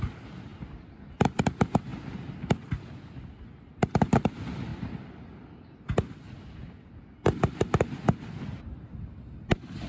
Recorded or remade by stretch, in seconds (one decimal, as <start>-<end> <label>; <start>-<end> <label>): 0.0-9.9 recorded